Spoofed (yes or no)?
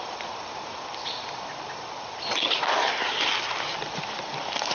no